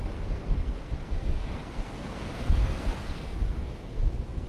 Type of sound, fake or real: fake